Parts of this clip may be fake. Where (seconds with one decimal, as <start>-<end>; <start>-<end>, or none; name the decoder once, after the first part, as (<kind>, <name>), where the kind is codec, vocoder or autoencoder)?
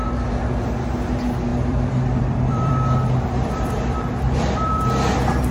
1.5-4.8 (vocoder, BigVGAN v2)